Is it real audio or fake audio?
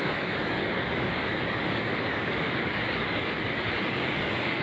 fake